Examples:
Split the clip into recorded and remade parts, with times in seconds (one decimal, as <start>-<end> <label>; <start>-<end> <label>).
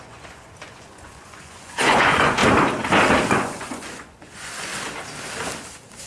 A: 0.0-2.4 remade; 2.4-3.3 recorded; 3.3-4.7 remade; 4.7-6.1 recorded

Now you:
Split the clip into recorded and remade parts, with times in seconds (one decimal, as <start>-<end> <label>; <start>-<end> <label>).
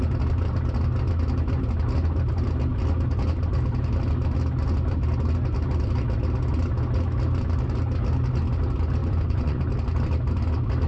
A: 0.0-9.0 recorded; 9.0-9.6 remade; 9.6-10.9 recorded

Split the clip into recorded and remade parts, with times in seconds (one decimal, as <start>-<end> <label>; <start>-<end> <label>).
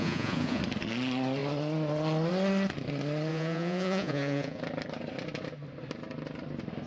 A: 0.0-0.6 remade; 0.6-3.3 recorded; 3.3-4.6 remade; 4.6-6.9 recorded